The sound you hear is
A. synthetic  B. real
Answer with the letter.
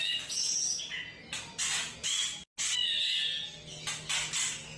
B